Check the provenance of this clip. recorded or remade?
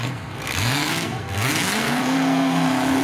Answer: remade